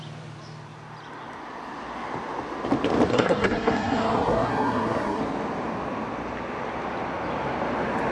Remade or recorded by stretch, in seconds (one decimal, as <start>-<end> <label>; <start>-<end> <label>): 0.0-3.1 recorded; 3.1-5.2 remade; 5.2-8.1 recorded